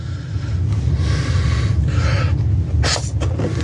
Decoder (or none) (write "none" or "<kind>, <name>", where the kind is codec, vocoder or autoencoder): none